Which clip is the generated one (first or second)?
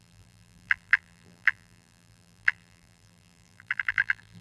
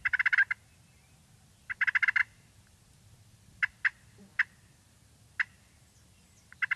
first